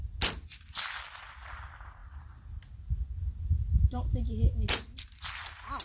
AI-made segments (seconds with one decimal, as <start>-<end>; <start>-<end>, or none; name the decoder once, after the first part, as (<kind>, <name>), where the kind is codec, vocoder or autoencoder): none